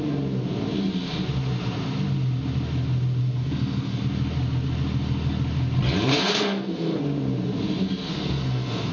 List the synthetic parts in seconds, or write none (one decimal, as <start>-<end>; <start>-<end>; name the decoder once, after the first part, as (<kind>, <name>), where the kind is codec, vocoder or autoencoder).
3.2-4.0 (codec, SNAC); 6.1-7.0; 8.1-8.9